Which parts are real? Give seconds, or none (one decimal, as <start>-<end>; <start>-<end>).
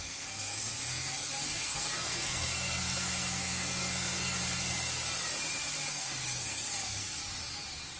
4.4-5.9; 7.2-8.0